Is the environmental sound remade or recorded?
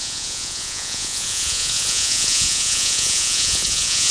remade